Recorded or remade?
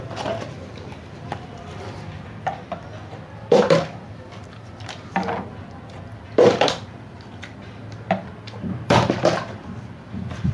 remade